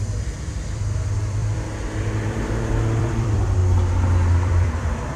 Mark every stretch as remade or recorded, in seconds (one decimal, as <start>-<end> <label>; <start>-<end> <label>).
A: 0.0-3.6 remade; 3.6-4.3 recorded; 4.3-5.2 remade